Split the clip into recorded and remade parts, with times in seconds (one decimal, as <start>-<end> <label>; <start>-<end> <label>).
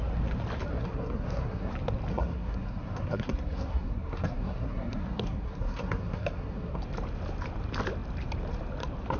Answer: 0.0-0.7 recorded; 0.7-1.7 remade; 1.7-2.1 recorded; 2.1-6.8 remade; 6.8-9.2 recorded